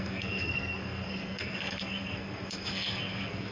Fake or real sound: fake